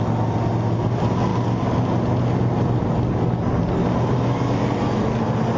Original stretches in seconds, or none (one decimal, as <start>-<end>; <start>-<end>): 0.0-5.6